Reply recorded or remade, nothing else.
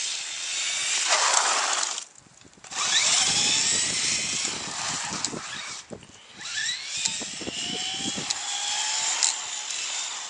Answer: recorded